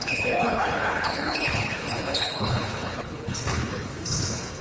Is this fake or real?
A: fake